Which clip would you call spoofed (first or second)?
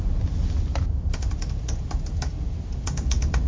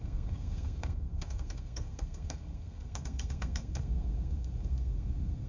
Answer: second